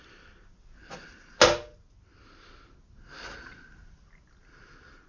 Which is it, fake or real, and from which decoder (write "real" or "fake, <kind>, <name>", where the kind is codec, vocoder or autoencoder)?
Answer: real